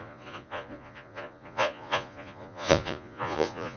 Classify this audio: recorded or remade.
remade